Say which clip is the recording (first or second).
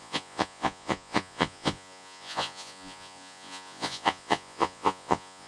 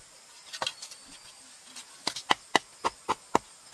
second